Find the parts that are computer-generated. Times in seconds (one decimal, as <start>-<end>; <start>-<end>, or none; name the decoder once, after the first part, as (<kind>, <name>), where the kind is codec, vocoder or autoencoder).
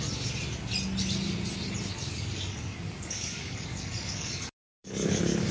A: 1.9-5.5 (codec, DAC)